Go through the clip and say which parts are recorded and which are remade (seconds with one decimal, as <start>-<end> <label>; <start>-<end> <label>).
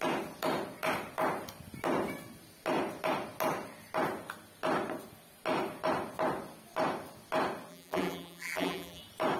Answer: 0.0-7.7 recorded; 7.7-9.0 remade; 9.0-9.4 recorded